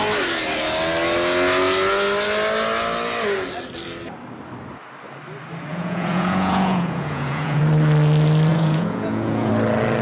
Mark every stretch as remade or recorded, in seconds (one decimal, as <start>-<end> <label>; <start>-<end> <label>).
0.0-5.7 recorded; 5.7-7.6 remade; 7.6-8.5 recorded; 8.5-9.5 remade; 9.5-10.0 recorded